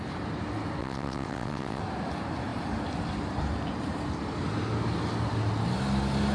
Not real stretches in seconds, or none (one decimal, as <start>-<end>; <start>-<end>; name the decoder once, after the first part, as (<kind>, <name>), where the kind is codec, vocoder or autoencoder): 0.8-1.8 (vocoder, WaveNeXt)